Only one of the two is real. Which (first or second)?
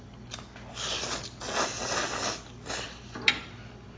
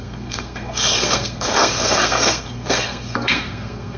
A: first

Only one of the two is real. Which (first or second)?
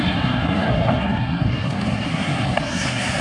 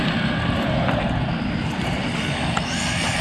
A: second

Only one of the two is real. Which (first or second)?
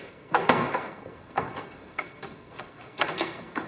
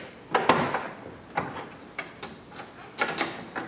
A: second